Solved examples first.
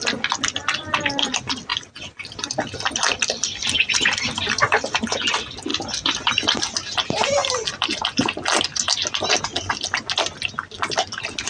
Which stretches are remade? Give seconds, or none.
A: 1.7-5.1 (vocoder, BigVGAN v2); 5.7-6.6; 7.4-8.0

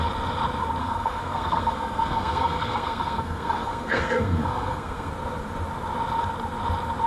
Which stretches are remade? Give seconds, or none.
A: 0.8-5.1 (codec, SNAC)

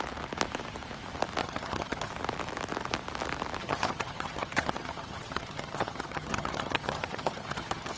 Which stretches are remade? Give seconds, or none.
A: 1.4-2.1 (vocoder, HiFi-GAN); 3.6-8.0

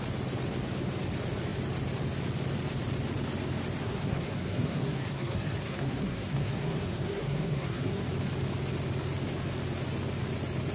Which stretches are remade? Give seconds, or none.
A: 3.8-8.0 (codec, SNAC)

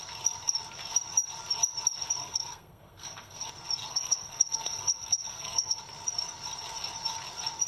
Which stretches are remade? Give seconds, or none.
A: 2.2-3.5 (codec, SNAC); 3.9-5.8